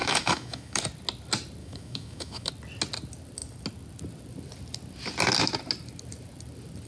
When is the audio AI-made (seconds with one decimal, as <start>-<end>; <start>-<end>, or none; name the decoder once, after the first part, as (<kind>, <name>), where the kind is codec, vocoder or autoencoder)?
0.0-0.8 (autoencoder, DAC-VAE); 1.6-2.5